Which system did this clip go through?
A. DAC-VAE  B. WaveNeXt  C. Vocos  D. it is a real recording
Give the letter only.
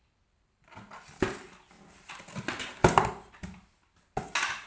D